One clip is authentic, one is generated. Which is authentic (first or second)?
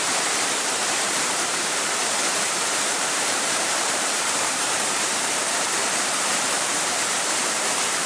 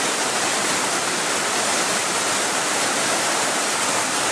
second